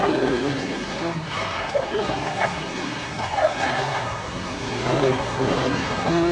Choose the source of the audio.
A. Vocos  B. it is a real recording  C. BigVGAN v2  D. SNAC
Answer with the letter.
D